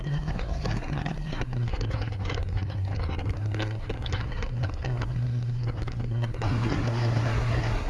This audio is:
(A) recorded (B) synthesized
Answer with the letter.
B